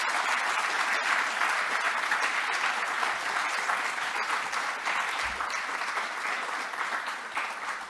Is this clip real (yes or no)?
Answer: yes